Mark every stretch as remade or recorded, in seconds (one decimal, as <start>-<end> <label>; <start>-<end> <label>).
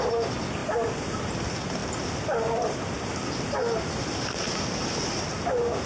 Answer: 0.0-5.9 recorded